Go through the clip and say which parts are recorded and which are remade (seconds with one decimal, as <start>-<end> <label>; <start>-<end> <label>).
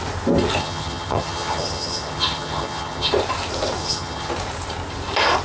0.0-0.6 recorded; 0.6-3.1 remade; 3.1-3.8 recorded; 3.8-4.3 remade; 4.3-5.4 recorded